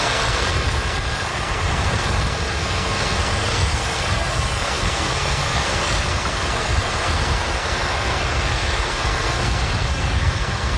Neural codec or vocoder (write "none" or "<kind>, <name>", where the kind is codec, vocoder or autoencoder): codec, SNAC